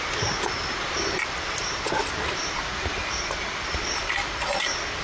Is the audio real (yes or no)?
yes